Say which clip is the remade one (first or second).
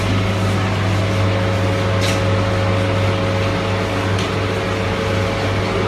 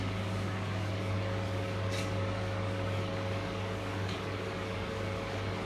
second